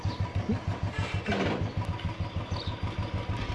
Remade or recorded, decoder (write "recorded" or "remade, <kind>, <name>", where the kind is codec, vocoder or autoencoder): recorded